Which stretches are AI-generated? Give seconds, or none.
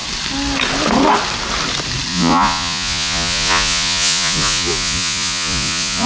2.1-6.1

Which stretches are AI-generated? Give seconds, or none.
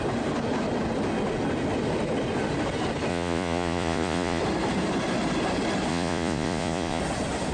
3.1-4.4; 5.9-7.0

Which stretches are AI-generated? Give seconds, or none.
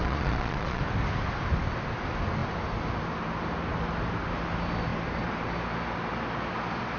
0.0-0.8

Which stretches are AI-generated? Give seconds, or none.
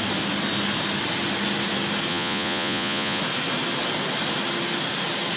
2.1-3.2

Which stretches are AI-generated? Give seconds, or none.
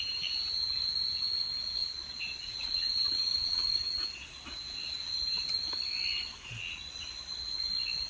1.8-5.1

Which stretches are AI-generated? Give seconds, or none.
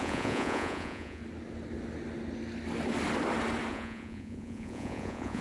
0.0-1.2; 3.7-5.4